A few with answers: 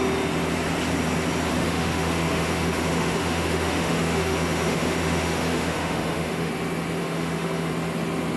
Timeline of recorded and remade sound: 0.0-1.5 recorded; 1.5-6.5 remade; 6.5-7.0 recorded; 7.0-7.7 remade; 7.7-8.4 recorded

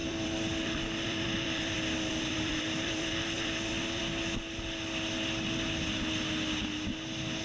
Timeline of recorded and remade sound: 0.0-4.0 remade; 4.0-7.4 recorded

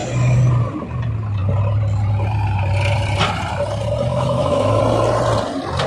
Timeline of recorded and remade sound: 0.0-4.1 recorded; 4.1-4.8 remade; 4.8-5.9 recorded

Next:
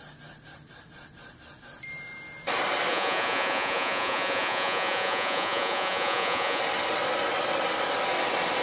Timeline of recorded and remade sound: 0.0-2.9 recorded; 2.9-6.6 remade; 6.6-8.6 recorded